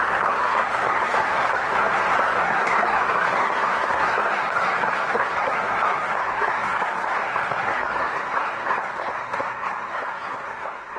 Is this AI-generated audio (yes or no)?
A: yes